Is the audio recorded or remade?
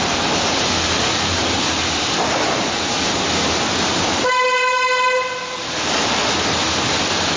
recorded